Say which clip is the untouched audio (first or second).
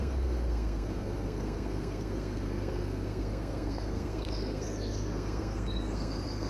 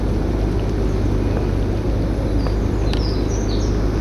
second